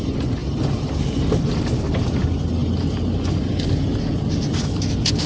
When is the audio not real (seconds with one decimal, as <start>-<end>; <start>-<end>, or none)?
none